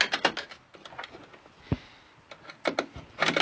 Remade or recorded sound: recorded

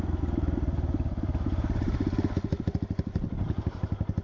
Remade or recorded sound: recorded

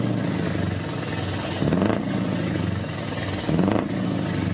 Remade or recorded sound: recorded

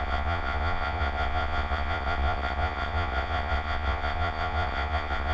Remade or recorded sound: remade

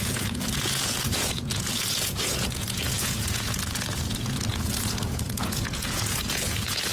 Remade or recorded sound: remade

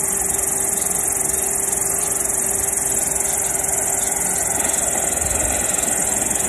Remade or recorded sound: recorded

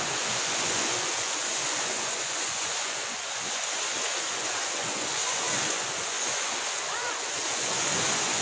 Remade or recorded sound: remade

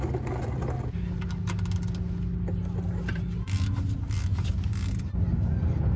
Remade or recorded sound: recorded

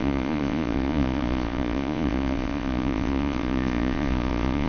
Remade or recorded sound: remade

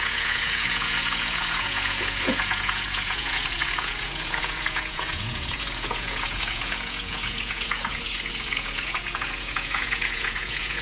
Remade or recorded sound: remade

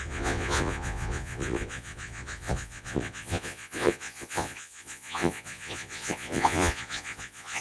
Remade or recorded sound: remade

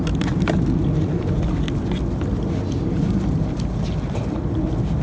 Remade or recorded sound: recorded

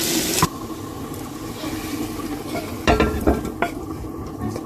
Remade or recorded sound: recorded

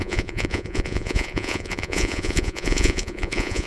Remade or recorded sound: remade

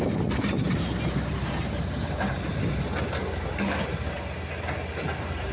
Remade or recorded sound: recorded